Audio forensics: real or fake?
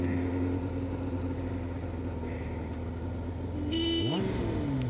real